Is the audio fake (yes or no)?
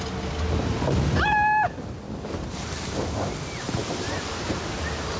no